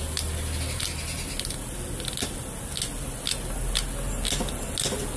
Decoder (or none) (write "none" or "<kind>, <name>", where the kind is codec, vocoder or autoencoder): none